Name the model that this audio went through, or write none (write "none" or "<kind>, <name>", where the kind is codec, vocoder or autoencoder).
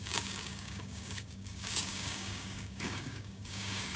codec, DAC